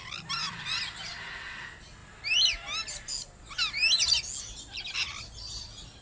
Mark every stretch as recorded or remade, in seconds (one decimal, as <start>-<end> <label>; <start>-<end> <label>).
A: 0.0-0.4 recorded; 0.4-1.5 remade; 1.5-6.0 recorded